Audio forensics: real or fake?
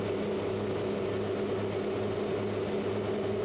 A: real